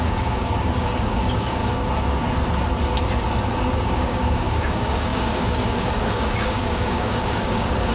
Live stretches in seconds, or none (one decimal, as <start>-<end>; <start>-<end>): 1.6-3.7

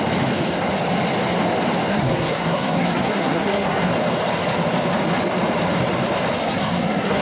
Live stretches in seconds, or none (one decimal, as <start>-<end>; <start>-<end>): 0.0-1.9; 3.9-6.4

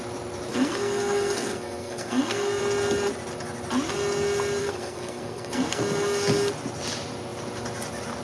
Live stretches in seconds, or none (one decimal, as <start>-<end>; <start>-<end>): 0.0-0.5; 2.6-4.6; 5.8-8.2

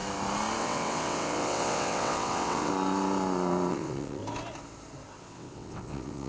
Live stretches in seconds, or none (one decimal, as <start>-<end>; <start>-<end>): 0.0-0.6; 2.7-3.7; 4.2-5.2